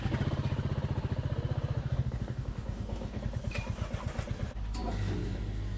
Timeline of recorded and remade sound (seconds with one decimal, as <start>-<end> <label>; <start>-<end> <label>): 0.0-1.8 recorded; 1.8-3.2 remade; 3.2-5.8 recorded